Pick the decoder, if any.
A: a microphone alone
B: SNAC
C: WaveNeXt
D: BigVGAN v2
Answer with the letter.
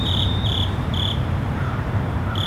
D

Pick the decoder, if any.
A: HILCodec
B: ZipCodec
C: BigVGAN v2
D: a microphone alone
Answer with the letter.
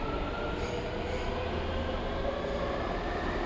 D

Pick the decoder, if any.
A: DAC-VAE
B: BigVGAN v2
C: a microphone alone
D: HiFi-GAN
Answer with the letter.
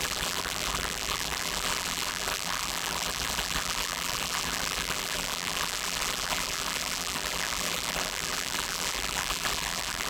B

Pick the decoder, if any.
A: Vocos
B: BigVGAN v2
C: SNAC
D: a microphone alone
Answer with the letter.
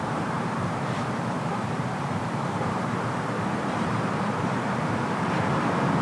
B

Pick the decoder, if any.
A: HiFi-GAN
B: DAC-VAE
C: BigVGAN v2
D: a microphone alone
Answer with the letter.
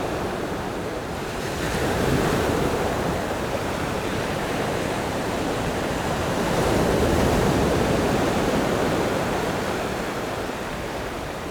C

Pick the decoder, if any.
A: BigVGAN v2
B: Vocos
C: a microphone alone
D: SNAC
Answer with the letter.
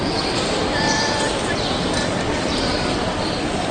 A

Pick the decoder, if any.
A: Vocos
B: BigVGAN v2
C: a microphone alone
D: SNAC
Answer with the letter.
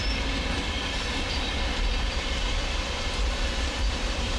B